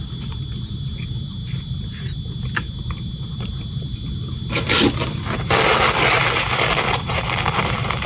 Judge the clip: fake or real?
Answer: real